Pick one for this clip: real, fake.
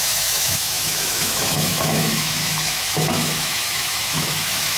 fake